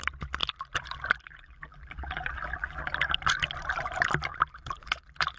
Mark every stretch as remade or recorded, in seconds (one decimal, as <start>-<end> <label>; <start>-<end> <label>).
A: 0.0-0.4 recorded; 0.4-2.8 remade; 2.8-4.3 recorded; 4.3-5.4 remade